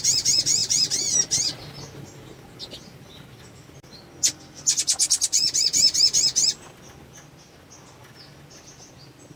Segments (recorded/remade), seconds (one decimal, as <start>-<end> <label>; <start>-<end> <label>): 0.0-0.6 recorded; 0.6-1.6 remade; 1.6-9.4 recorded